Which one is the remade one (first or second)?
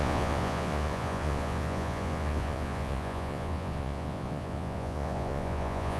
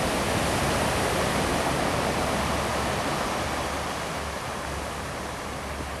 first